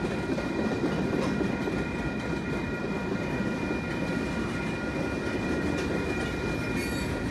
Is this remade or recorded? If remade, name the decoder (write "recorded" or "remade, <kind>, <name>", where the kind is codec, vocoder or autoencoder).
recorded